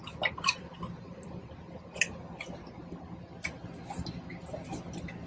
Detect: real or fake real